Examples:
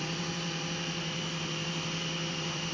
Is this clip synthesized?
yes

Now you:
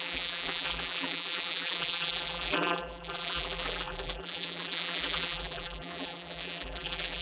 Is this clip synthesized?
yes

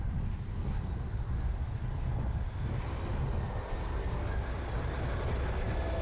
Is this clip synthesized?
no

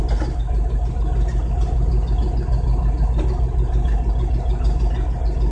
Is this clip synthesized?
no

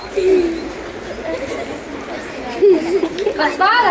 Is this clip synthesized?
no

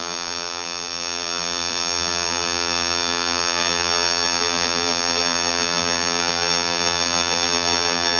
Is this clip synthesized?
yes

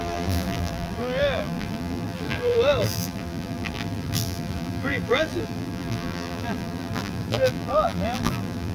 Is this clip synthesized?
yes